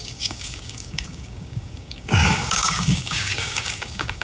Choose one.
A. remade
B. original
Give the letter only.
A